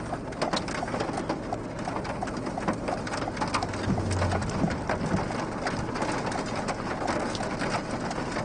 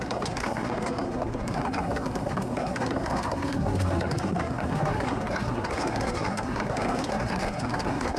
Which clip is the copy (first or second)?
second